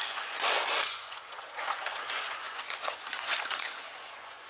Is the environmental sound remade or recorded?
remade